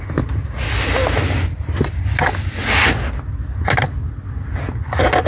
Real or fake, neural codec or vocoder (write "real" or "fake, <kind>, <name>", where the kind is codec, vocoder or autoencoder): real